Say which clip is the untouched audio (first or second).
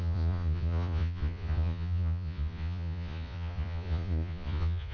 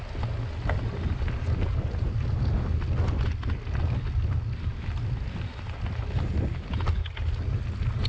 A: second